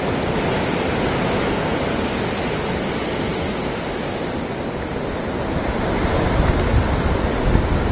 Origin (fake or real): real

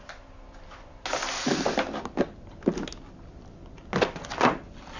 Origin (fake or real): real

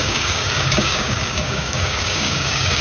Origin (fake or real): fake